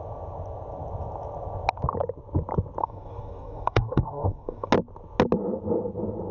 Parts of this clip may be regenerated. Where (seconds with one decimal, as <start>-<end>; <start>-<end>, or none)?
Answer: 2.8-4.7